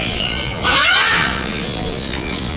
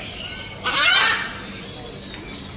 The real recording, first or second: second